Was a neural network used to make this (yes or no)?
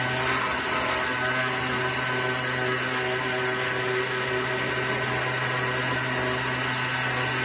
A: no